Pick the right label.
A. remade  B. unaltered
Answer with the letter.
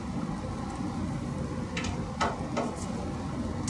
B